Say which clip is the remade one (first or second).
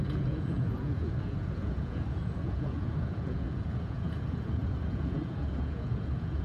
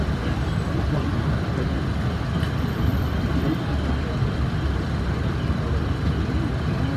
first